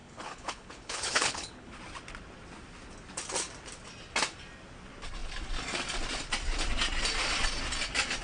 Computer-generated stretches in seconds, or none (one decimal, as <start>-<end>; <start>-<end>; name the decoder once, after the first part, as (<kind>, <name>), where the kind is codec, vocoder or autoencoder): 0.0-1.8 (codec, HILCodec)